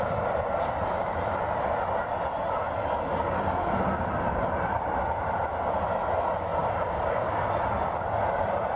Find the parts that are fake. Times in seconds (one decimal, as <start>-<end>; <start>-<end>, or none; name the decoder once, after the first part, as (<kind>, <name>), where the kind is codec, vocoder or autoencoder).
6.6-7.4 (codec, DAC)